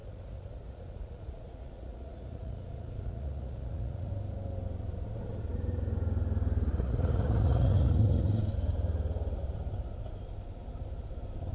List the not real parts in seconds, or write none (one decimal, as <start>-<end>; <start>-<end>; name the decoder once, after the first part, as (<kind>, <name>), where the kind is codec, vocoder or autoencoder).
0.0-4.1 (vocoder, Vocos); 6.7-8.4